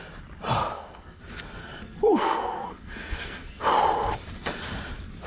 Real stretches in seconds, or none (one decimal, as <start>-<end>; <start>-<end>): 0.0-0.6; 1.2-1.6; 3.6-5.3